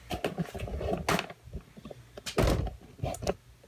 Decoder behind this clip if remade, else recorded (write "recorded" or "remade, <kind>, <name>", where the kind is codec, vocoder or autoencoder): recorded